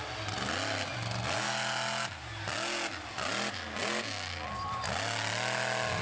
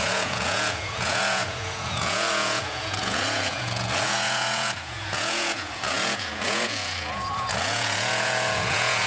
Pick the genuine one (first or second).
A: first